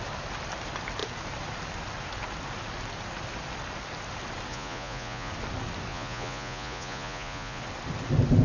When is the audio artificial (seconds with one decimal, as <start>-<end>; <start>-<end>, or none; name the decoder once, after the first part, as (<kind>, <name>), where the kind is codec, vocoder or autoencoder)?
4.5-5.3 (vocoder, Vocos); 5.9-7.6